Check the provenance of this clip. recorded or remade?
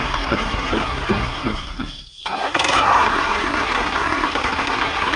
remade